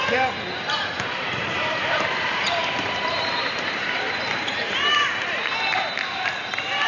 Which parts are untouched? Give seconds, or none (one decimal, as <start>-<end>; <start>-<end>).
none

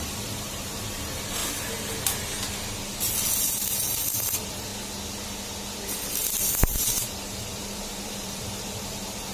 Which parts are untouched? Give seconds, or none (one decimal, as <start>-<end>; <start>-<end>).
1.4-3.5; 4.7-6.5

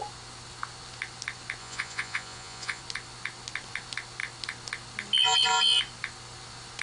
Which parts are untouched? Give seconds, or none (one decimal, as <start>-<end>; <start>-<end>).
0.0-1.6; 2.8-6.8

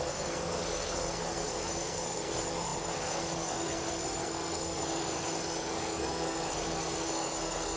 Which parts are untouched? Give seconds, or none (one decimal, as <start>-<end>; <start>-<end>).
none